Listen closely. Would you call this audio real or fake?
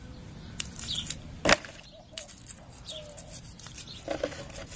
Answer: real